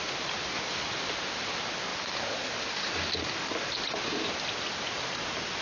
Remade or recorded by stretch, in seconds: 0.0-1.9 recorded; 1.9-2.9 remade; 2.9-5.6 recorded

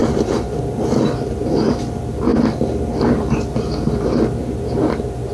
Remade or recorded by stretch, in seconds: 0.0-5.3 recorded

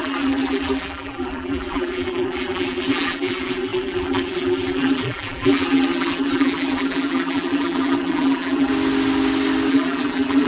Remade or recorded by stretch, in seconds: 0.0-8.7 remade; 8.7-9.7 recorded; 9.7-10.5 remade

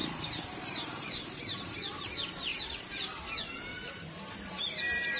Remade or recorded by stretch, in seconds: 0.0-2.1 remade; 2.1-2.5 recorded; 2.5-3.2 remade; 3.2-3.7 recorded; 3.7-4.5 remade; 4.5-5.2 recorded

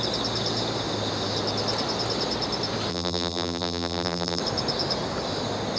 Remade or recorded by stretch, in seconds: 0.0-2.9 recorded; 2.9-4.4 remade; 4.4-5.8 recorded

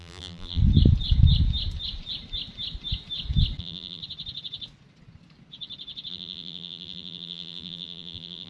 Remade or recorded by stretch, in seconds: 0.0-0.6 remade; 0.6-3.6 recorded; 3.6-4.0 remade; 4.0-6.1 recorded; 6.1-8.5 remade